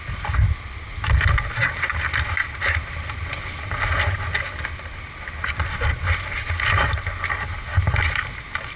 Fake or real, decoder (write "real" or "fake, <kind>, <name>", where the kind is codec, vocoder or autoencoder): real